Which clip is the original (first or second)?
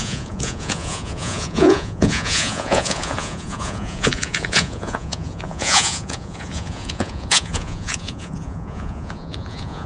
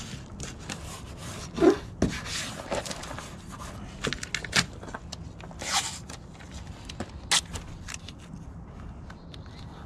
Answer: second